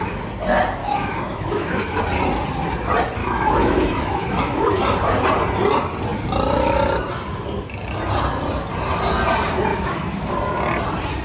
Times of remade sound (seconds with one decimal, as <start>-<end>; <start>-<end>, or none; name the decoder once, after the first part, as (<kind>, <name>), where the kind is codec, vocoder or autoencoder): 0.8-2.0 (autoencoder, DAC-VAE); 3.2-4.7; 9.7-10.3